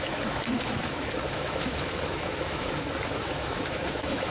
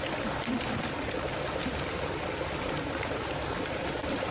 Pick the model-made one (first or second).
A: first